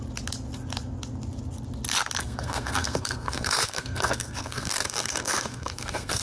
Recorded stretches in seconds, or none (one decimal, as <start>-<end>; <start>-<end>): 0.0-2.2